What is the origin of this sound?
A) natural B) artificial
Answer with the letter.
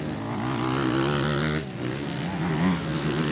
A